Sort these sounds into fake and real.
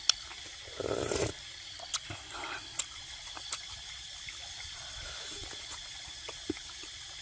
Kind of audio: real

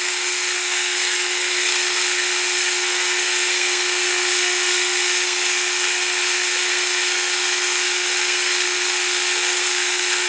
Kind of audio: fake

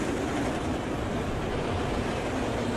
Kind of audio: fake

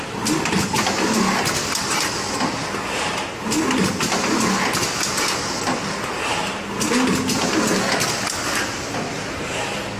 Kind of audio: real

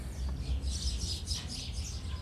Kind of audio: real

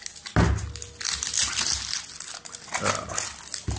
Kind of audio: real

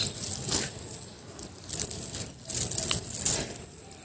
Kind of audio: real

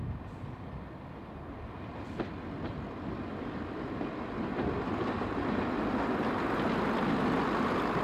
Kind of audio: real